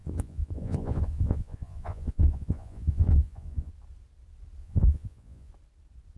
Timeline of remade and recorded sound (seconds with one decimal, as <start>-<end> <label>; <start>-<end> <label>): 0.0-3.7 remade; 3.7-4.6 recorded; 4.6-5.5 remade; 5.5-6.2 recorded